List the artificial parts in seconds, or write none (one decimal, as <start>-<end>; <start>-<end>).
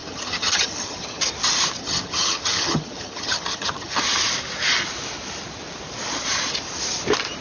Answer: 0.0-1.2; 1.8-4.0